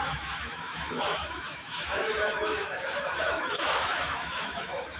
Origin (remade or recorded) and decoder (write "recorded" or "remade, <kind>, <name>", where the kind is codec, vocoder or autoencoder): remade, autoencoder, DAC-VAE